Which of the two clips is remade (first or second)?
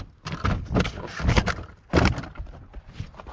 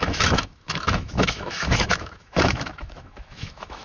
second